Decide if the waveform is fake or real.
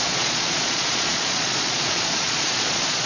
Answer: fake